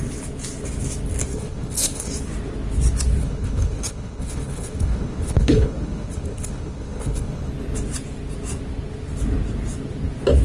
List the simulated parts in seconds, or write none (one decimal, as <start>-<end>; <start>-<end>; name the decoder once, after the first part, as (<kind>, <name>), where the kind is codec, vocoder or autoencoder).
1.3-2.1 (codec, HILCodec); 3.2-7.5